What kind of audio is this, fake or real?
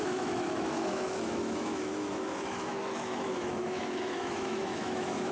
fake